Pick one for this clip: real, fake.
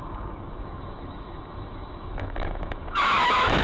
fake